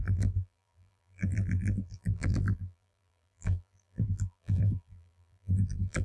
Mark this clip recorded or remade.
remade